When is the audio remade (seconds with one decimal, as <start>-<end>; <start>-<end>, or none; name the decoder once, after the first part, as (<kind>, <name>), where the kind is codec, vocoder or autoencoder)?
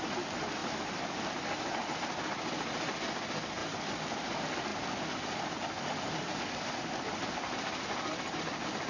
3.6-4.1 (vocoder, BigVGAN v2); 4.7-7.8